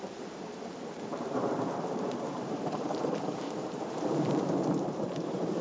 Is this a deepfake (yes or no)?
yes